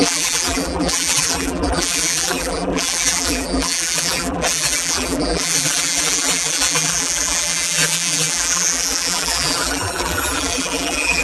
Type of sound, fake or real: fake